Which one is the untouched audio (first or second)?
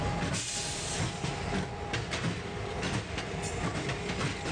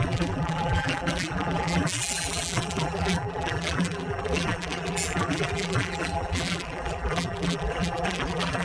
first